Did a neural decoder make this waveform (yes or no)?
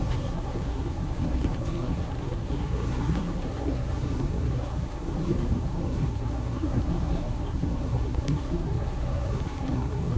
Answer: yes